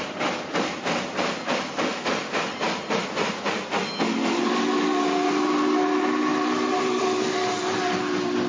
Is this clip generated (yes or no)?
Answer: no